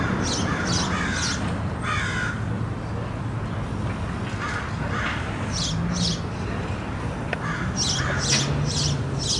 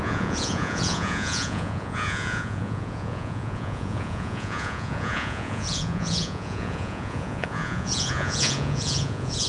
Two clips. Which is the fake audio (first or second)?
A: second